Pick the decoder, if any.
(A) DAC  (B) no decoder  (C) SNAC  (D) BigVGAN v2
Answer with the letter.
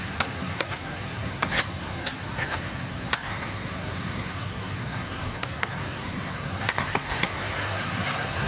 C